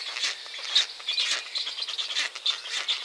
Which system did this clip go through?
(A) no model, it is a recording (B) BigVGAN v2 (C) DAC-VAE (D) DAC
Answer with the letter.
A